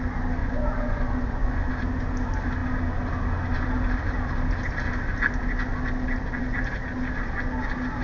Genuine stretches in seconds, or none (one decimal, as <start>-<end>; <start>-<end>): 0.0-0.4; 1.7-8.0

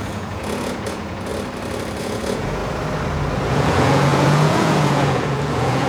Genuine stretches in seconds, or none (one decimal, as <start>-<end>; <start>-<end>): 1.3-2.0; 2.6-3.5